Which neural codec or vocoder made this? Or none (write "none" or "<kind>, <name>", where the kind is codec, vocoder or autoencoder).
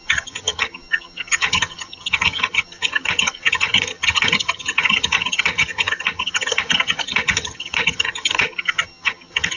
vocoder, HiFi-GAN